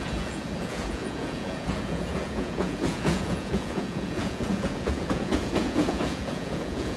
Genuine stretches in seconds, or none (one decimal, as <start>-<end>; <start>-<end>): none